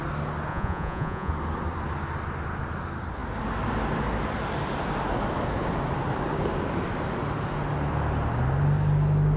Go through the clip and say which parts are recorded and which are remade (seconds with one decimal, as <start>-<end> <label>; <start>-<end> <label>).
0.0-0.5 recorded; 0.5-1.3 remade; 1.3-9.4 recorded